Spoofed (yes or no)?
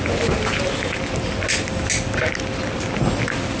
no